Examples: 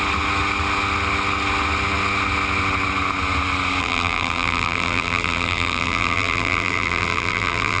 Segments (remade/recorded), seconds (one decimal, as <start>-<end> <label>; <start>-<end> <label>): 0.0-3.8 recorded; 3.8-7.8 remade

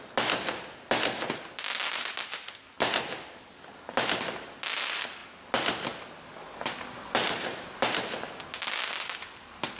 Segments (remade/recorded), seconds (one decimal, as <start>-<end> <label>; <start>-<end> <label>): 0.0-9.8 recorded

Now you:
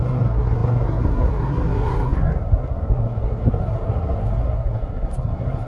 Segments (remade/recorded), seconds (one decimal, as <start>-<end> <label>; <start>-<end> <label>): 0.0-5.7 remade

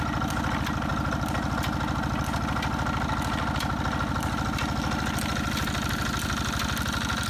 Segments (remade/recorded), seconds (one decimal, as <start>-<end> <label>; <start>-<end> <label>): 0.0-7.3 recorded

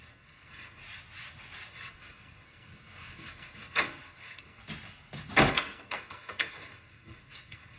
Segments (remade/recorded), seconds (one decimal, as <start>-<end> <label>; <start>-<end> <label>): 0.0-0.8 remade; 0.8-1.7 recorded; 1.7-4.6 remade; 4.6-5.5 recorded; 5.5-7.8 remade

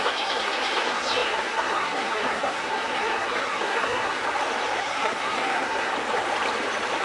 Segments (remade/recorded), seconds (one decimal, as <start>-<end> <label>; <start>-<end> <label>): 0.0-4.2 remade; 4.2-4.8 recorded; 4.8-5.9 remade; 5.9-7.0 recorded

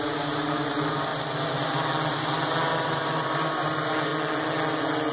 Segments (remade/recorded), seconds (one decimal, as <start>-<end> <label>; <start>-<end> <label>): 0.0-1.1 remade; 1.1-2.8 recorded; 2.8-4.1 remade; 4.1-5.1 recorded